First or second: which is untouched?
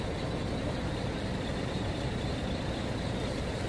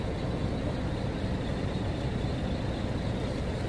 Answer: second